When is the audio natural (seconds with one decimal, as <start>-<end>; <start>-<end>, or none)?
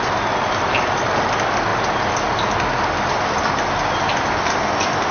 0.0-5.1